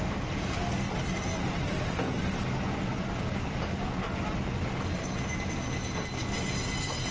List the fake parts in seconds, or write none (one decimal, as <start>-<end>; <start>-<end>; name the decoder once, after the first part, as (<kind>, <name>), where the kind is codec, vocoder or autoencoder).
none